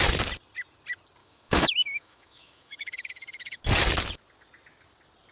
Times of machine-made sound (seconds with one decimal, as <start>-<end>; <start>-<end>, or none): 1.2-3.6